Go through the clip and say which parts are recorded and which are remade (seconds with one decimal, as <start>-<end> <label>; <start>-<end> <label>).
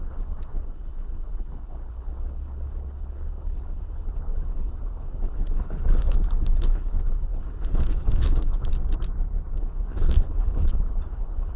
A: 0.0-8.7 remade; 8.7-9.6 recorded; 9.6-11.6 remade